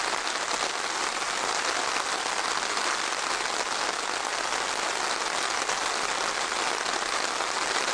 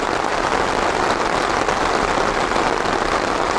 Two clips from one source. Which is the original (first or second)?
first